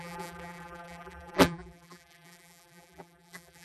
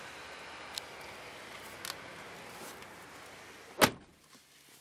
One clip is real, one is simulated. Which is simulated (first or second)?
first